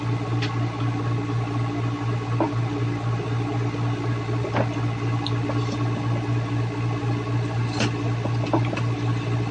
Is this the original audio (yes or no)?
yes